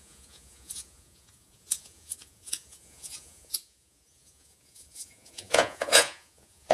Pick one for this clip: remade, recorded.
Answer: remade